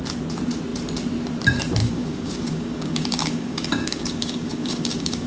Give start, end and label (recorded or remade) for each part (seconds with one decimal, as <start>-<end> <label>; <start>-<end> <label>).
0.0-1.8 recorded; 1.8-5.3 remade